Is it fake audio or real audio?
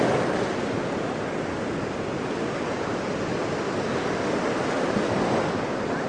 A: real